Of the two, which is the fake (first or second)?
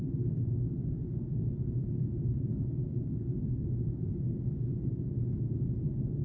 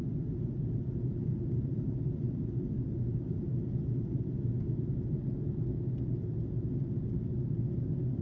first